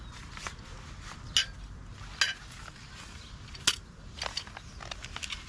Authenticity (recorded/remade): recorded